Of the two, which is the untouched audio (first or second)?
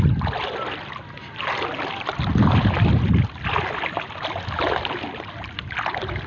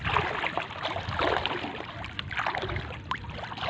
first